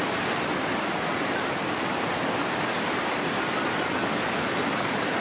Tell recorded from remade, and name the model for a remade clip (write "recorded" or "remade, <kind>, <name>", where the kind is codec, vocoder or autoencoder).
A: recorded